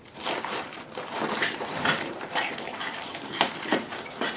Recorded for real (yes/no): no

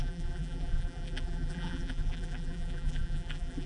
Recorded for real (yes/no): no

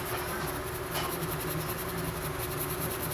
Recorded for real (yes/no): yes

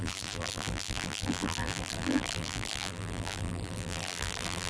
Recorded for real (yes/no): no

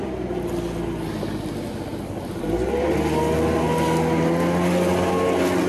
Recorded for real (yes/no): yes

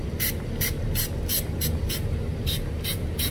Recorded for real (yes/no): yes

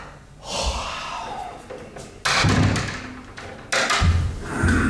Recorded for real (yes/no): yes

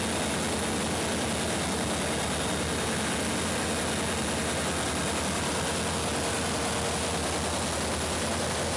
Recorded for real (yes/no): yes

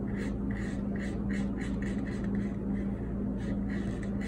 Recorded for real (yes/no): yes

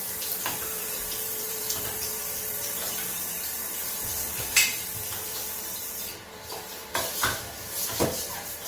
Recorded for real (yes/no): no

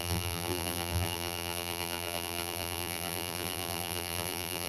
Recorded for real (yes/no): no